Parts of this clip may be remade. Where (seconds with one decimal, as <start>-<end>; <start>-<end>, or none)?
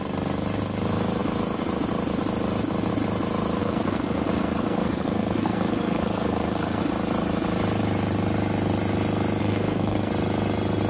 3.6-6.8; 9.4-10.1